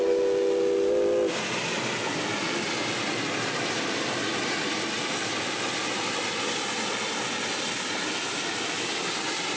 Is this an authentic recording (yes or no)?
yes